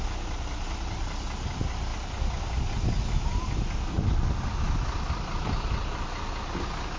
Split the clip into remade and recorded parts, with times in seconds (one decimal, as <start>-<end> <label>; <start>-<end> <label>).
0.0-7.0 recorded